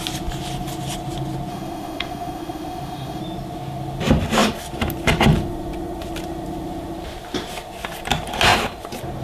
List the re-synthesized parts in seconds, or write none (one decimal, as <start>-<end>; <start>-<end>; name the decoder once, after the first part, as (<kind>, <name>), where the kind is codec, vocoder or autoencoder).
1.5-3.2 (autoencoder, DAC-VAE)